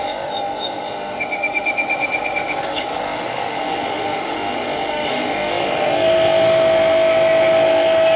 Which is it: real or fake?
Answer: fake